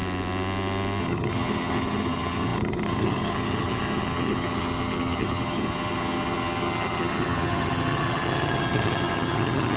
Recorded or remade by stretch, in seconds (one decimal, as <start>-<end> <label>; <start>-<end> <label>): 0.0-1.0 recorded; 1.0-9.8 remade